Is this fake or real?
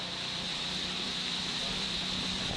fake